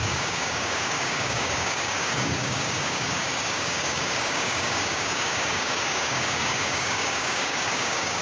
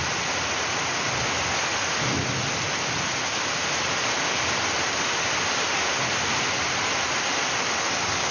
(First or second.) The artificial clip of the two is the first